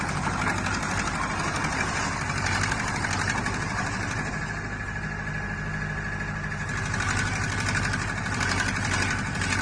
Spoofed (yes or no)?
no